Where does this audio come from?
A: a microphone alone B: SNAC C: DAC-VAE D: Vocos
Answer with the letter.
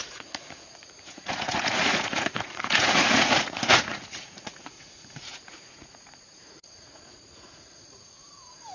D